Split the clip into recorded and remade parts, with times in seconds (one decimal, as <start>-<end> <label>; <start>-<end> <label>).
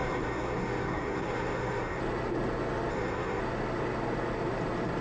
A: 0.0-2.0 remade; 2.0-2.9 recorded; 2.9-3.4 remade; 3.4-5.0 recorded